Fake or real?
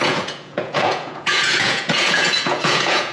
fake